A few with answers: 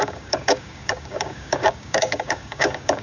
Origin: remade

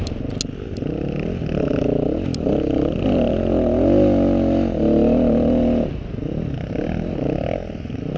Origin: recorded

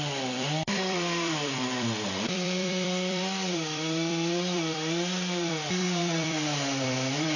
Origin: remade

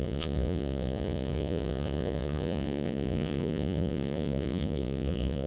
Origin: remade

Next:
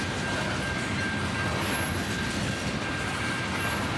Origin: recorded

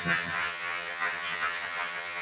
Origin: remade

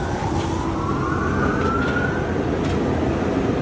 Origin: recorded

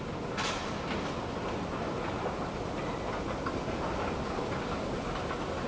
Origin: recorded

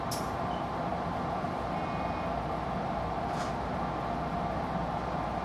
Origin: recorded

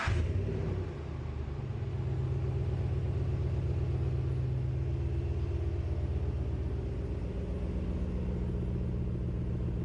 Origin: recorded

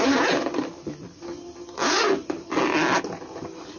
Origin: recorded